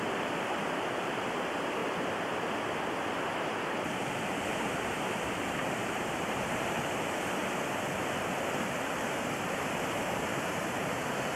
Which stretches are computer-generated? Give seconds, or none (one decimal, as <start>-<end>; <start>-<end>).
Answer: 0.0-1.8; 4.4-7.4; 8.7-11.4